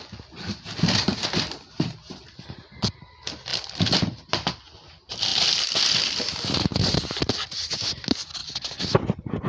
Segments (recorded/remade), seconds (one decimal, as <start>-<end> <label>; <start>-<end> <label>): 0.0-8.4 recorded; 8.4-9.0 remade; 9.0-9.5 recorded